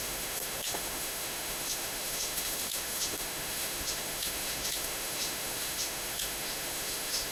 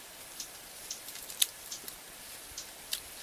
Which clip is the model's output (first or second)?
first